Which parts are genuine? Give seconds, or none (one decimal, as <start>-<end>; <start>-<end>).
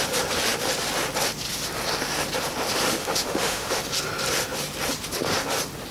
0.0-3.0; 3.8-5.9